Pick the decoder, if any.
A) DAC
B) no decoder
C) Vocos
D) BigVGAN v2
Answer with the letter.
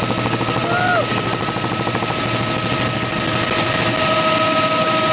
B